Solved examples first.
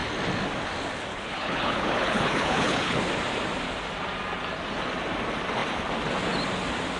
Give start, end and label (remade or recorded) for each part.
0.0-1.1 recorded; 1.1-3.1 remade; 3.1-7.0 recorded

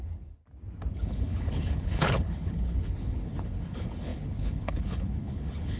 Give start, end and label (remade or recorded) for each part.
0.0-0.4 remade; 0.4-0.9 recorded; 0.9-5.8 remade

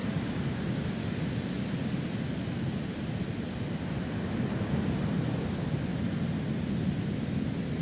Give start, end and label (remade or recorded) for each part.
0.0-7.8 recorded